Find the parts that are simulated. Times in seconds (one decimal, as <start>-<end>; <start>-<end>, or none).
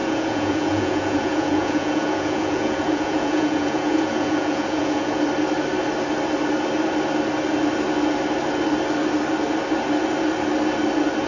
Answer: 0.0-5.2